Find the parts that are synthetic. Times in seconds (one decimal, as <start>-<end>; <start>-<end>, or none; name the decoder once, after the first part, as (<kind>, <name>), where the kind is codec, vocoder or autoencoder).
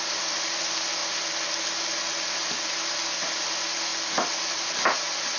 none